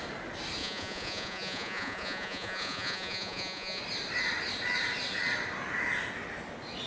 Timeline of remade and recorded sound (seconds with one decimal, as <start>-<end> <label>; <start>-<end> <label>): 0.0-0.6 recorded; 0.6-3.8 remade; 3.8-6.9 recorded